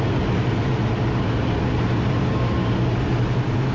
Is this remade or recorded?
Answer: recorded